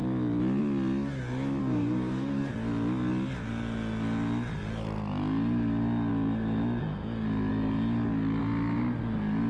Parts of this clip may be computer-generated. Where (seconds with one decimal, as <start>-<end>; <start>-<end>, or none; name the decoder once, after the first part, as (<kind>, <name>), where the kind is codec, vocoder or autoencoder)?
1.6-2.5 (codec, DAC)